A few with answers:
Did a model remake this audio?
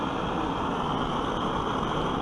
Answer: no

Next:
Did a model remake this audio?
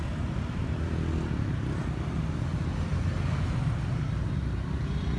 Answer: no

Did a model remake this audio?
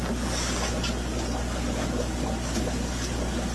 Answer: no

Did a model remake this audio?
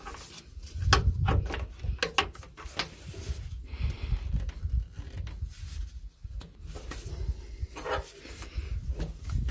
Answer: no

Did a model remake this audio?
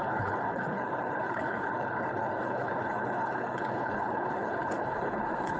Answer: yes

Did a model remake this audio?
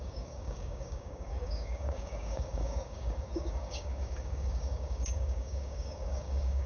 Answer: yes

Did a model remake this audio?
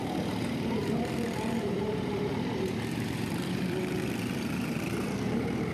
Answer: yes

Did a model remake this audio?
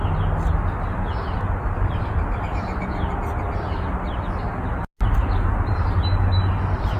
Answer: no